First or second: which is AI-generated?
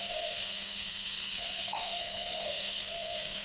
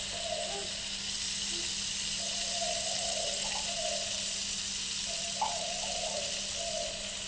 first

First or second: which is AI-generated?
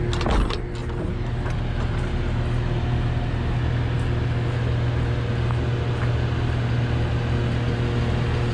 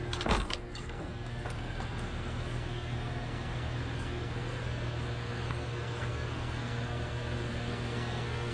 second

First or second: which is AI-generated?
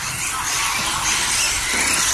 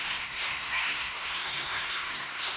second